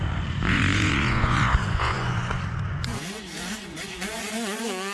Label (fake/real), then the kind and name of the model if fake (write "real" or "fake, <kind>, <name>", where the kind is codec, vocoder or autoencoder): fake, vocoder, Vocos